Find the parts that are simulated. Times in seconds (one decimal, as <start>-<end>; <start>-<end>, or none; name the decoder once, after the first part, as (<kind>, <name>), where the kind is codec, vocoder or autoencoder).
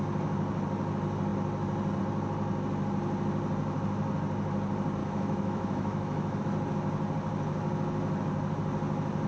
5.0-6.4 (autoencoder, DAC-VAE)